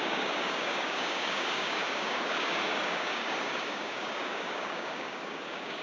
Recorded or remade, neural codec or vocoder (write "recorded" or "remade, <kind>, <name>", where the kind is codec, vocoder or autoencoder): remade, codec, DAC